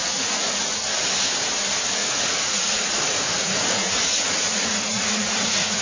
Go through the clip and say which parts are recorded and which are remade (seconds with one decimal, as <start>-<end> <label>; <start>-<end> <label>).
0.0-0.8 remade; 0.8-2.0 recorded; 2.0-5.8 remade